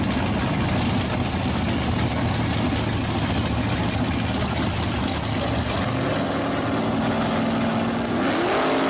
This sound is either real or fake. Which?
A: real